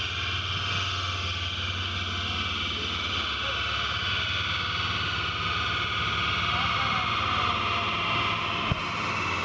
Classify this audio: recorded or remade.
recorded